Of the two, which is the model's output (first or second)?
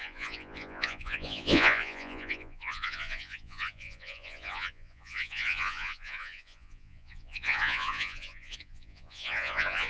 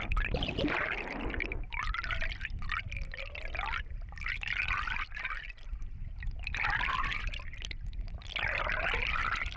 first